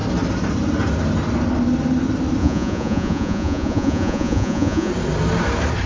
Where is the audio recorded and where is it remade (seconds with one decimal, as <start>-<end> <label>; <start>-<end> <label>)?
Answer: 0.0-2.4 recorded; 2.4-4.9 remade; 4.9-5.9 recorded